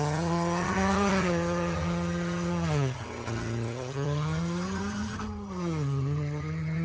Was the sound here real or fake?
fake